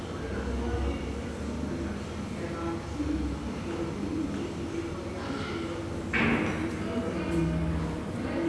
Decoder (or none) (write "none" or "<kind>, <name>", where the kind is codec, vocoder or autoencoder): none